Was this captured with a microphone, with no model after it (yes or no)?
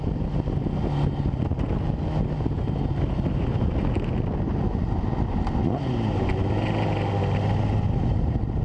yes